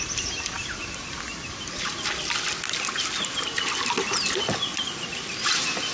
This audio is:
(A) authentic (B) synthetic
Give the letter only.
A